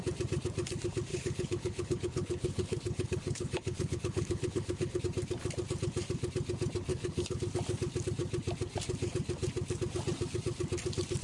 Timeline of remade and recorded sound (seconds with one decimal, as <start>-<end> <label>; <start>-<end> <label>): 0.0-1.1 recorded; 1.1-5.0 remade; 5.0-6.9 recorded; 6.9-7.4 remade; 7.4-11.2 recorded